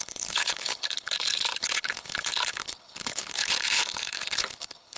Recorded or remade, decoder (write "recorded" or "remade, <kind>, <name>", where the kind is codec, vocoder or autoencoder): remade, codec, HILCodec